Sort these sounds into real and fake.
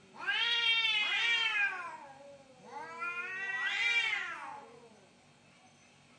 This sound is real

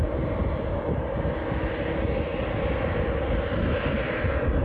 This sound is real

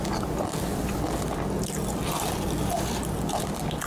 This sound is real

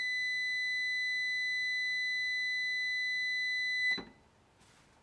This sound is real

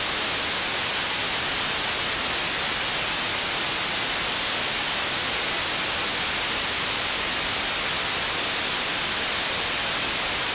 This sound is real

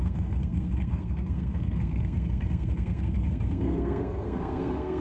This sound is fake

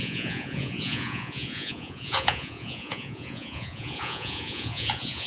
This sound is fake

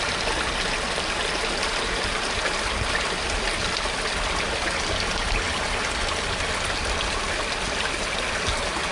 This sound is real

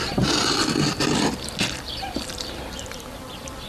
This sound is fake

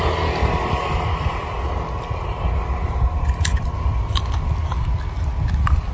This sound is real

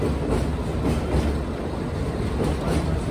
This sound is real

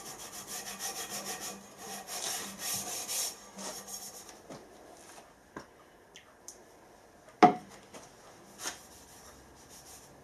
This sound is real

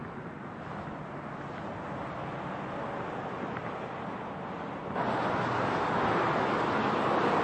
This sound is real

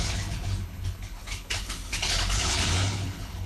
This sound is fake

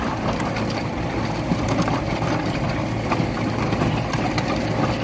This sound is real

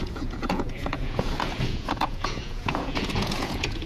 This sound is fake